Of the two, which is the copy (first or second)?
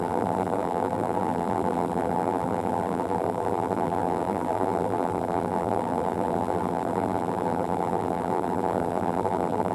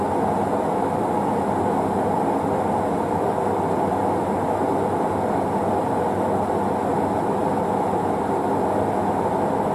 first